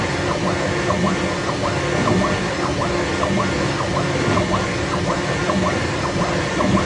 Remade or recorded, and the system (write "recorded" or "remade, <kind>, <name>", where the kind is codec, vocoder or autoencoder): recorded